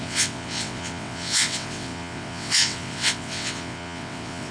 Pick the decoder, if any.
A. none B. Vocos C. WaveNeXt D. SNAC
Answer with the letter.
C